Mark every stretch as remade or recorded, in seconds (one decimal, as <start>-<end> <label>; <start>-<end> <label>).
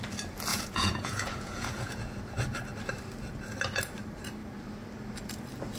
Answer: 0.0-0.5 recorded; 0.5-2.2 remade; 2.2-5.8 recorded